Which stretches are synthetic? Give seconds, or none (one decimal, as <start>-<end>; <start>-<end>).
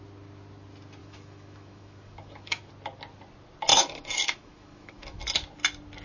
1.0-2.7; 3.7-5.2